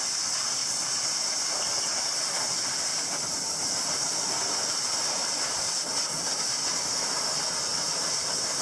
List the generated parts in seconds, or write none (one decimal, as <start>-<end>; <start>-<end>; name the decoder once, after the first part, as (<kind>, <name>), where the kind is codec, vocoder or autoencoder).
2.9-5.3 (vocoder, BigVGAN v2)